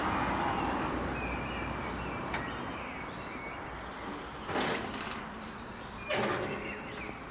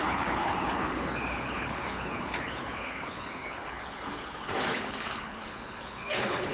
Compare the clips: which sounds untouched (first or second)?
first